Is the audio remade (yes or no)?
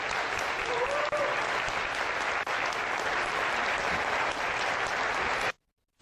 no